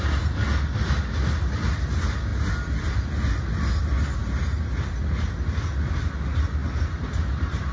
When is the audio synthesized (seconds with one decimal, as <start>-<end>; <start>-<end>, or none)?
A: none